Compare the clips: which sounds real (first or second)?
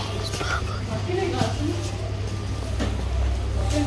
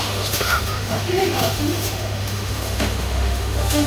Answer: first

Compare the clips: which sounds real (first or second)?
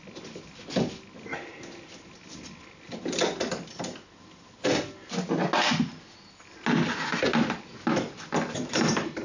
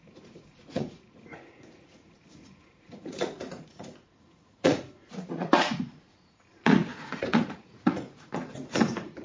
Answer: first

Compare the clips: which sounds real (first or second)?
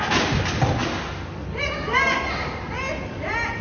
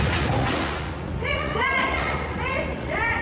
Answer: first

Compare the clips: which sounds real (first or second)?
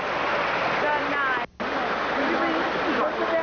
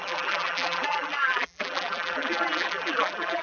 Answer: first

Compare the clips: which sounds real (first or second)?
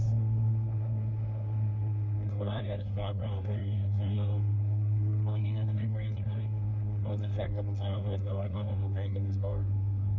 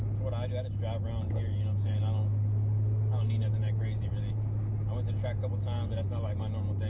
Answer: second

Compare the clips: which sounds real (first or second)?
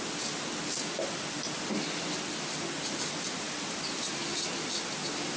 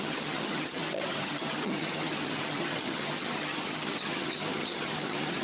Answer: first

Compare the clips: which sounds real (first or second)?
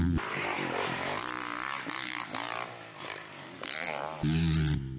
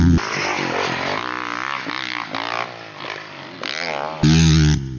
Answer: second